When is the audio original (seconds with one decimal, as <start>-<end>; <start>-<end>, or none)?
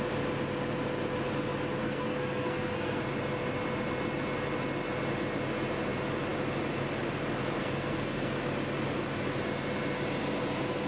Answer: 0.0-1.8; 3.0-7.6; 8.3-10.9